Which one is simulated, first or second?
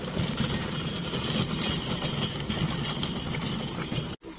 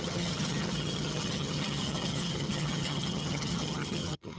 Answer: second